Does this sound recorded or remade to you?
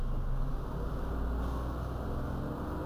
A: recorded